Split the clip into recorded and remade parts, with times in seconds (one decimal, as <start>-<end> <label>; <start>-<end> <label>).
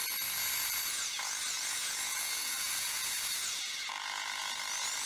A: 0.0-0.8 recorded; 0.8-3.9 remade; 3.9-5.1 recorded